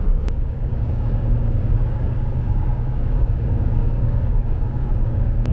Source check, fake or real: fake